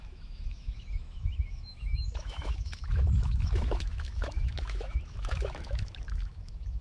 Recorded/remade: remade